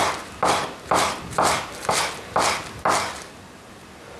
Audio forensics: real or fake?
real